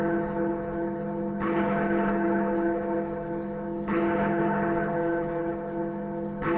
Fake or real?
fake